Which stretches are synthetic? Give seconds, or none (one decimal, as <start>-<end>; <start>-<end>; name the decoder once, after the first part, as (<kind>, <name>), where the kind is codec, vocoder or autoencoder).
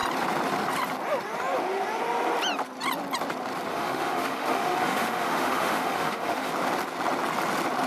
3.7-6.5 (autoencoder, DAC-VAE)